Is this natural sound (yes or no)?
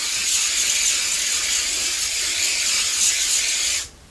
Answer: yes